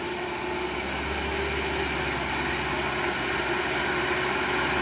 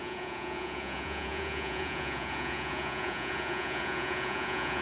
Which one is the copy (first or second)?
second